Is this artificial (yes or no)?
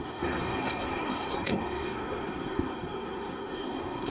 yes